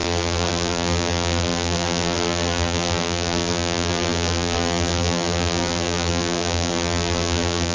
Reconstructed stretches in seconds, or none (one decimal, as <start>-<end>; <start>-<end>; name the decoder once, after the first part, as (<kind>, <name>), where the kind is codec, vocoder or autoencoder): 0.0-7.7 (vocoder, BigVGAN v2)